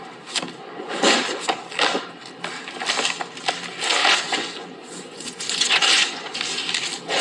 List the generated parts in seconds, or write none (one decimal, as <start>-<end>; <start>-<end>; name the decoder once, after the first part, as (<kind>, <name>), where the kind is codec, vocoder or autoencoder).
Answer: 0.6-1.2 (vocoder, Vocos); 4.0-6.4

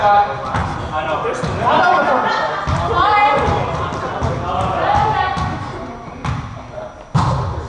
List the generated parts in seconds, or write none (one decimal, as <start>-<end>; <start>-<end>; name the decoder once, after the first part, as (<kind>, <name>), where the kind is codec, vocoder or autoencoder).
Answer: none

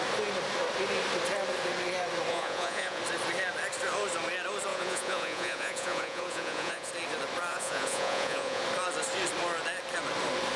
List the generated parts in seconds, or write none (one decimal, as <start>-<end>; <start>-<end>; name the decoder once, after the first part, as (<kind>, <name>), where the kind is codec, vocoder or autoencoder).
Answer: 2.3-3.0 (vocoder, Vocos); 4.7-6.9; 7.5-8.6

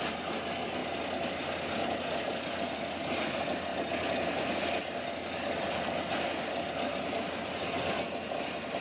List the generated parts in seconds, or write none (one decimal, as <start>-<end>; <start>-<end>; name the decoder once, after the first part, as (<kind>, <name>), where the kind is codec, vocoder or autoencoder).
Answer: none

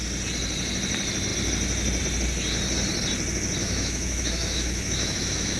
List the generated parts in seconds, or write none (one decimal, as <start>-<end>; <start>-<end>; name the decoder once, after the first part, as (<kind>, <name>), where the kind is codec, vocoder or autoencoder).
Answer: 3.6-5.6 (autoencoder, DAC-VAE)

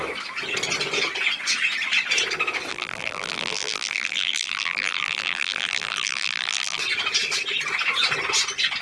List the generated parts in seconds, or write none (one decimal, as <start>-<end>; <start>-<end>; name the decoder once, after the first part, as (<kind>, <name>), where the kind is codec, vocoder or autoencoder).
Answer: 2.7-6.8 (vocoder, BigVGAN v2)